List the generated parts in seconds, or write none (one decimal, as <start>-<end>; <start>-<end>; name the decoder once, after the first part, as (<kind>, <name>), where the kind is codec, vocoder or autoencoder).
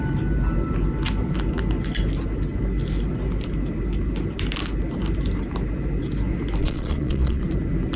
6.6-7.4 (vocoder, Vocos)